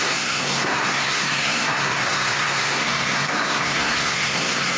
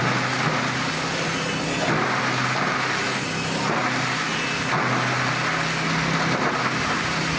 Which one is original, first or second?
second